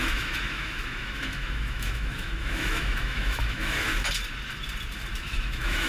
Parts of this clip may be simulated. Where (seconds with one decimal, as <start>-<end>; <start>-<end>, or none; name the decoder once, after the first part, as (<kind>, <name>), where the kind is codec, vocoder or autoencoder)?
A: 0.0-3.9 (autoencoder, DAC-VAE); 5.2-5.9